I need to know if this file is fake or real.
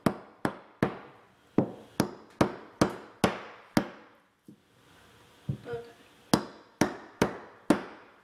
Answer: real